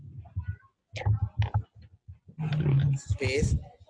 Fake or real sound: real